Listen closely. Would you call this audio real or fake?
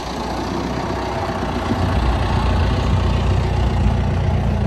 real